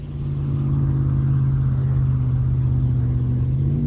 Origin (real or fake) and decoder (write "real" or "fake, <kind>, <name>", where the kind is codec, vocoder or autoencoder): real